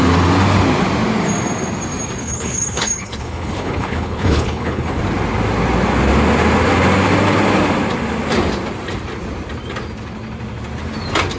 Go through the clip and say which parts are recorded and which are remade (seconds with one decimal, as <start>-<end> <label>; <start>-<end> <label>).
0.0-2.2 recorded; 2.2-5.0 remade; 5.0-11.4 recorded